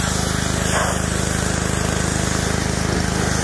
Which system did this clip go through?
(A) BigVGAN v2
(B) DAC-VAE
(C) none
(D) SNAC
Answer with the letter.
C